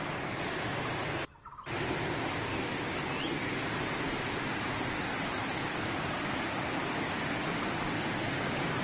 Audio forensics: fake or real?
real